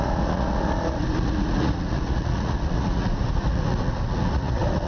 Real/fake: fake